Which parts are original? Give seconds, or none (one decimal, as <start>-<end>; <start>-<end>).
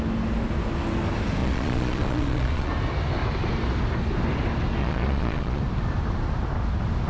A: 0.0-1.4; 2.7-4.8; 5.6-7.1